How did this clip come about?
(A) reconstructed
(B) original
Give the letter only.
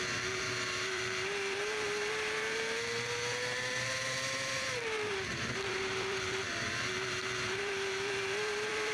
A